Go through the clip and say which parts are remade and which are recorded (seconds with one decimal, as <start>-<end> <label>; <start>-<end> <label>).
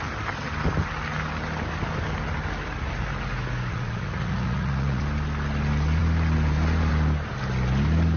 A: 0.0-3.7 recorded; 3.7-5.0 remade; 5.0-8.2 recorded